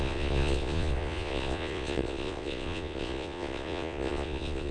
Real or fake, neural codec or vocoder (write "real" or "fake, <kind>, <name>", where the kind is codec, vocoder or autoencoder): fake, vocoder, Vocos